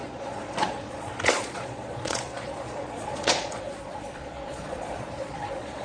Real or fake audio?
fake